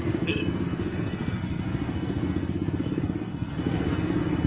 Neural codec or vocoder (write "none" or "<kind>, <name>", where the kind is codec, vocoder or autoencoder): codec, SNAC